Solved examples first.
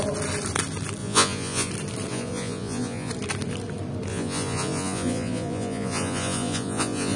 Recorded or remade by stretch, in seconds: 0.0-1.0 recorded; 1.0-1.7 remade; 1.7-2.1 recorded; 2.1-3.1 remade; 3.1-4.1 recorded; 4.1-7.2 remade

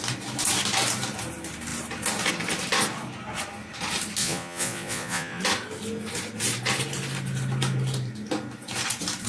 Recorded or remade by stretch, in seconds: 0.0-4.2 recorded; 4.2-5.4 remade; 5.4-9.3 recorded

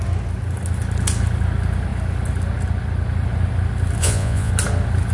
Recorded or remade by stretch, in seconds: 0.0-4.0 recorded; 4.0-4.5 remade; 4.5-5.1 recorded

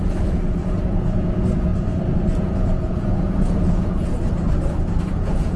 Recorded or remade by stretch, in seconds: 0.0-1.7 remade; 1.7-2.4 recorded; 2.4-4.1 remade; 4.1-5.0 recorded; 5.0-5.6 remade

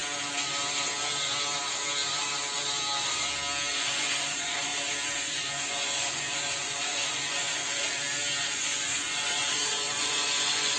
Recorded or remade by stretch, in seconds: 0.0-3.7 recorded; 3.7-4.7 remade; 4.7-5.2 recorded; 5.2-7.8 remade; 7.8-8.4 recorded; 8.4-10.8 remade

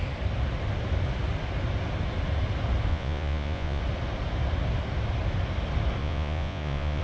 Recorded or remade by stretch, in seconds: 0.0-2.9 recorded; 2.9-3.8 remade; 3.8-6.0 recorded; 6.0-7.0 remade

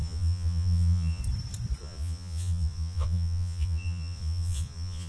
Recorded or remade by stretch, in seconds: 0.0-1.2 remade; 1.2-1.8 recorded; 1.8-5.1 remade